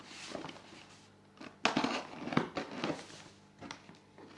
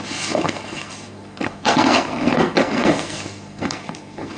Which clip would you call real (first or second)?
first